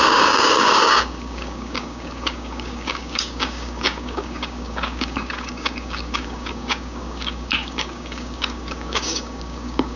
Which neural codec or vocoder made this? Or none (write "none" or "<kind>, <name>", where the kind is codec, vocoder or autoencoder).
codec, DAC